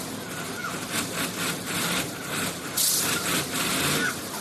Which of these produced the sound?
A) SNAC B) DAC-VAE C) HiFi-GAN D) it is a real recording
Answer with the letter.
D